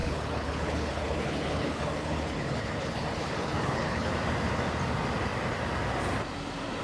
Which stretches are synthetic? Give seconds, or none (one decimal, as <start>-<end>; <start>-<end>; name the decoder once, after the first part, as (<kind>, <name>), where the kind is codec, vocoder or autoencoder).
0.0-4.1 (codec, HILCodec)